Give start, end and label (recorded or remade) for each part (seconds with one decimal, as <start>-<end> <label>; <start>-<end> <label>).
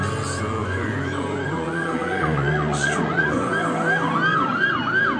0.0-0.6 recorded; 0.6-3.5 remade; 3.5-4.3 recorded; 4.3-4.8 remade; 4.8-5.2 recorded